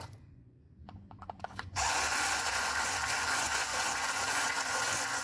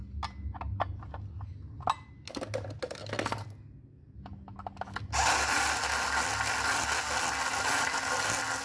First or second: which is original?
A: second